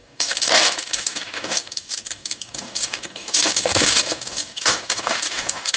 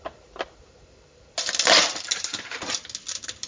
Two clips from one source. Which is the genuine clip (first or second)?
second